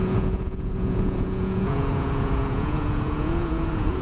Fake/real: fake